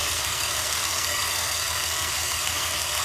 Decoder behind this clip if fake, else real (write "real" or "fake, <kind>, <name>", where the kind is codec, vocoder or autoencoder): fake, codec, SNAC